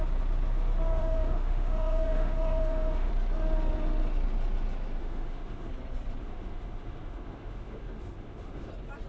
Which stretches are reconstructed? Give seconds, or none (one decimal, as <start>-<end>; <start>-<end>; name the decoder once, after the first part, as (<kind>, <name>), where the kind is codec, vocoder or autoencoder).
1.0-3.1 (autoencoder, DAC-VAE); 5.0-5.7; 6.2-8.7